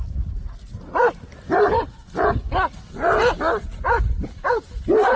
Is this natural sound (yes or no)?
yes